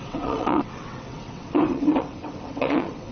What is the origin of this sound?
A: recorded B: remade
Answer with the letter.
B